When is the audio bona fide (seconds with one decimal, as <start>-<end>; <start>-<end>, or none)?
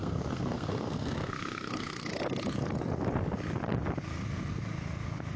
2.1-5.4